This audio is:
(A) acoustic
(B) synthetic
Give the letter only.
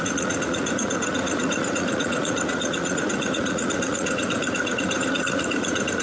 B